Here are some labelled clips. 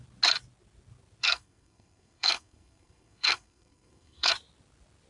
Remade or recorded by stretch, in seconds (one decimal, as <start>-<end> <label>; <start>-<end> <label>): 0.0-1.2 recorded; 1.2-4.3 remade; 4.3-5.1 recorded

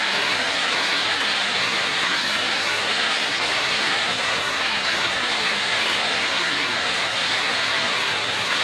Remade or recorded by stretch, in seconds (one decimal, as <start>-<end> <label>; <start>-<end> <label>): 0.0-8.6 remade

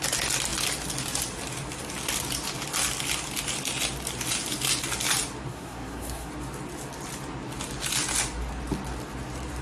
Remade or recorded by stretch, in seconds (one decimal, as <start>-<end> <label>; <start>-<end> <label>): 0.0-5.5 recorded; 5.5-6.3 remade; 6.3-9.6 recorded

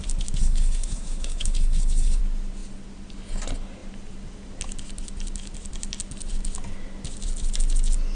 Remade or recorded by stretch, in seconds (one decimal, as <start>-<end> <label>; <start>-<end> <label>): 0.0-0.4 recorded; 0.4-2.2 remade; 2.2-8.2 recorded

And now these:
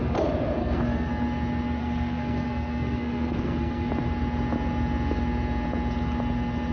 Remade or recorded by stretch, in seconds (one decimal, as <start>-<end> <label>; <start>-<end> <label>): 0.0-0.6 recorded; 0.6-1.1 remade; 1.1-1.8 recorded; 1.8-3.9 remade; 3.9-6.7 recorded

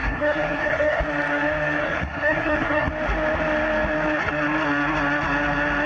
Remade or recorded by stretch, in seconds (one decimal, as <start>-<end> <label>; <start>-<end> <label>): 0.0-1.0 remade; 1.0-1.8 recorded; 1.8-2.9 remade; 2.9-5.9 recorded

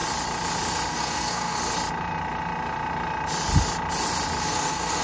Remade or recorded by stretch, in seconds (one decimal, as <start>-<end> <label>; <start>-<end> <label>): 0.0-0.9 recorded; 0.9-1.6 remade; 1.6-4.4 recorded; 4.4-5.0 remade